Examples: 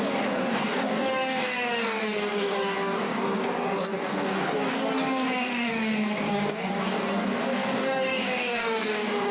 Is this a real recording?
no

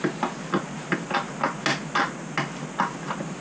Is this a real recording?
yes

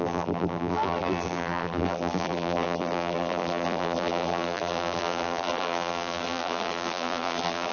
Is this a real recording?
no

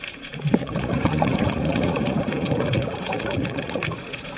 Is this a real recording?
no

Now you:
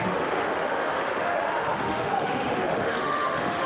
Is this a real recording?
no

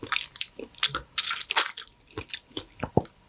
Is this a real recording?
yes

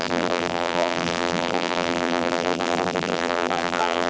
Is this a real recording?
no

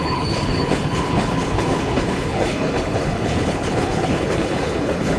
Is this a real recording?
no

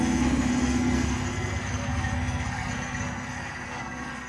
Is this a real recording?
no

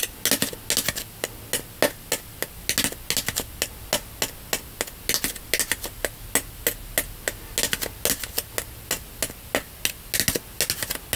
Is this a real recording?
yes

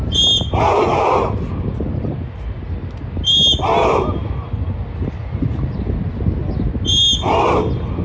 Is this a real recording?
yes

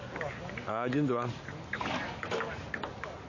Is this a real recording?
no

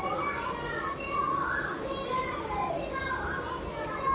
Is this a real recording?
yes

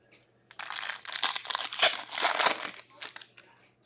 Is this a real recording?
yes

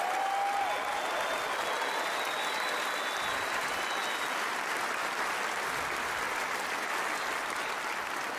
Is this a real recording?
yes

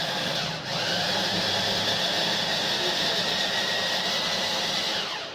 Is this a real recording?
yes